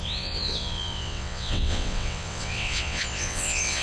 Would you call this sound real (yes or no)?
no